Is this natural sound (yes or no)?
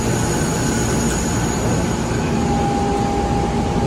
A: yes